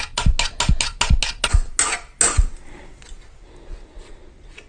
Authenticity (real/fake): real